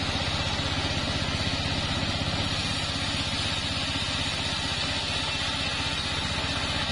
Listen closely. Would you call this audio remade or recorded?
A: recorded